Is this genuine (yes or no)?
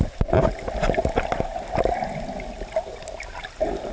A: yes